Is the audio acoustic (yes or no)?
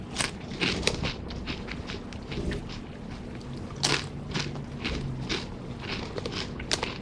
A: yes